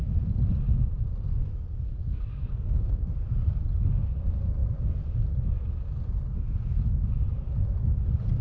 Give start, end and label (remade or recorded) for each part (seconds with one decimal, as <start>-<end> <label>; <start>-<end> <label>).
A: 0.0-2.0 recorded; 2.0-3.1 remade; 3.1-8.4 recorded